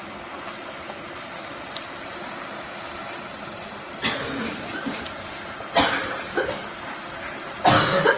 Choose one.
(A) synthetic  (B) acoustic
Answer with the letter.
B